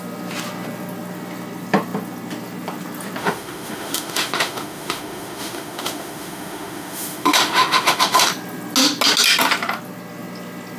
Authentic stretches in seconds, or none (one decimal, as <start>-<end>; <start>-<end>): 0.0-3.2; 8.3-10.8